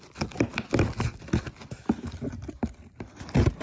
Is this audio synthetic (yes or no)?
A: no